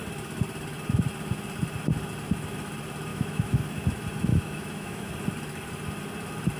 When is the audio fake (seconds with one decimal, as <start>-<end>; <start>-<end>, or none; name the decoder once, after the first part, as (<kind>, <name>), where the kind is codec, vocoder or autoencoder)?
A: 3.1-3.8 (autoencoder, DAC-VAE); 4.3-5.1